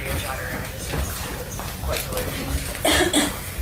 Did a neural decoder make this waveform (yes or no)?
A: no